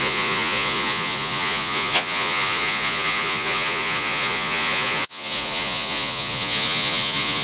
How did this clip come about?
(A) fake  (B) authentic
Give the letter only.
A